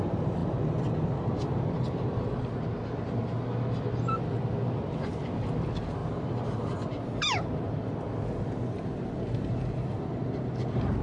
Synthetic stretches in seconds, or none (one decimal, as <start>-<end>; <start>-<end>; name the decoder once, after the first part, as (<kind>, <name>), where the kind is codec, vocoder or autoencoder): none